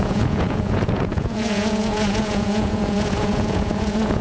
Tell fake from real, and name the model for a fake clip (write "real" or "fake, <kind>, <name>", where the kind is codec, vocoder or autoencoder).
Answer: fake, vocoder, Vocos